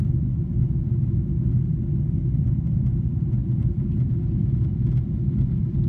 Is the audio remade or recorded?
recorded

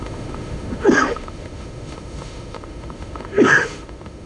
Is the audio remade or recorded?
remade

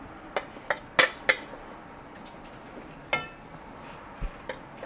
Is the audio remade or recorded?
recorded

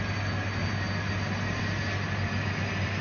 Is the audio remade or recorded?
recorded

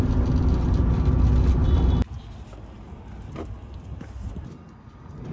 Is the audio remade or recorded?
recorded